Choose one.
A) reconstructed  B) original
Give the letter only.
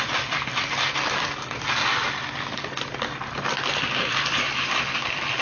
B